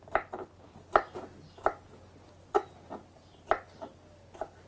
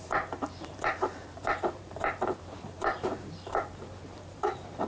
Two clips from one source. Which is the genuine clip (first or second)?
first